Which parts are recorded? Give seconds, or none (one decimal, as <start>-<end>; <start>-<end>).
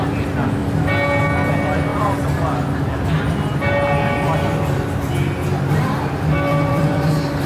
0.0-6.5; 7.1-7.5